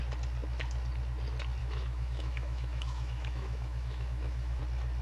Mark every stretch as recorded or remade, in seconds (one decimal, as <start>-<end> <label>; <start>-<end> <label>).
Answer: 0.0-1.6 recorded; 1.6-4.6 remade; 4.6-5.0 recorded